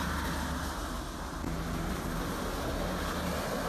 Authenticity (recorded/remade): recorded